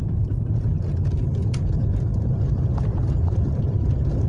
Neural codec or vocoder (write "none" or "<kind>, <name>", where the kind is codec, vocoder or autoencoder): vocoder, BigVGAN v2